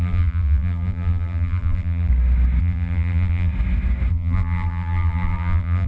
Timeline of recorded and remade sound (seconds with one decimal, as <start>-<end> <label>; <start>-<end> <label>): 0.0-2.1 remade; 2.1-2.6 recorded; 2.6-3.5 remade; 3.5-4.1 recorded; 4.1-5.9 remade